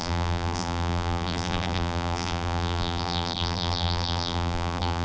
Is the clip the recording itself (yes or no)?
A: no